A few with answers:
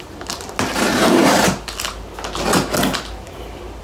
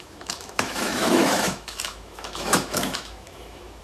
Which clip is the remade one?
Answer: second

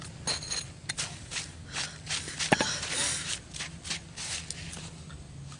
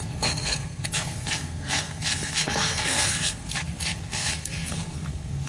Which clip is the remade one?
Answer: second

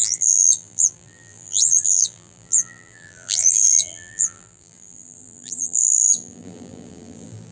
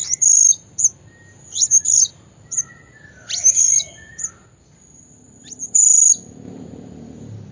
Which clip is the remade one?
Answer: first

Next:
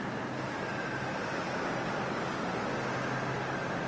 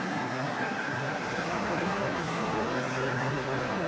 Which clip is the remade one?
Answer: second